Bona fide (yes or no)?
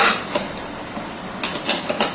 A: yes